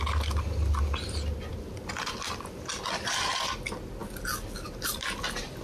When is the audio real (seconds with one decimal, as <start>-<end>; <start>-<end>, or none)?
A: 0.0-5.6